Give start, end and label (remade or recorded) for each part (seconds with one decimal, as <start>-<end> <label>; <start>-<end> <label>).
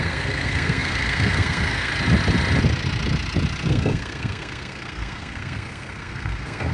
0.0-1.9 remade; 1.9-3.7 recorded; 3.7-6.7 remade